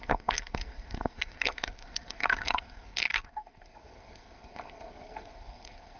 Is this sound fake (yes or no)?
yes